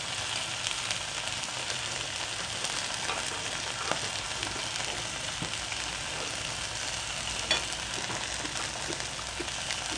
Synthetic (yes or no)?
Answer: no